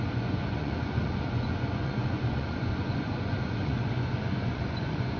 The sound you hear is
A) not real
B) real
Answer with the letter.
A